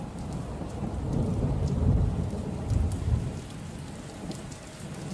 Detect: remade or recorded recorded